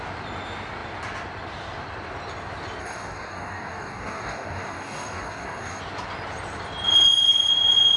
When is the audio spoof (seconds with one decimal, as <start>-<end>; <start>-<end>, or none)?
2.8-5.8